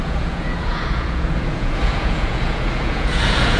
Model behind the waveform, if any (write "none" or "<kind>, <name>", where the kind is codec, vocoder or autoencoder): vocoder, Vocos